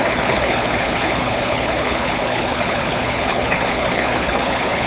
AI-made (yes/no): yes